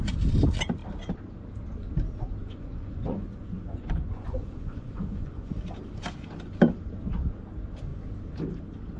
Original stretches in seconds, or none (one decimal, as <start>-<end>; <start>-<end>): 0.0-2.4; 5.5-9.0